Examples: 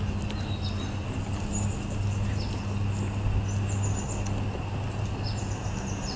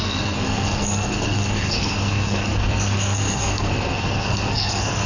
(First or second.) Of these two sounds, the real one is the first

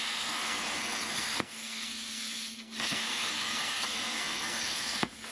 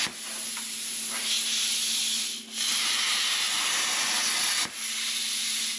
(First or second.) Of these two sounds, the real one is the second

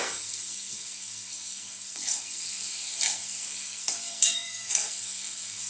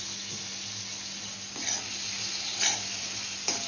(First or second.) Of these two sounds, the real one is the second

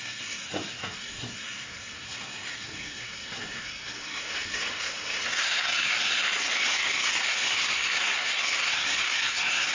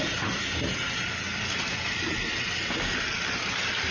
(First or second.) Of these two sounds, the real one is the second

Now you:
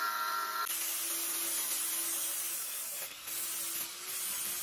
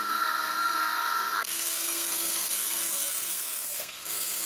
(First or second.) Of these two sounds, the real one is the first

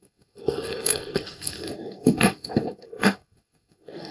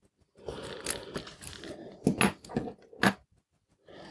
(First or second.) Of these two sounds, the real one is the second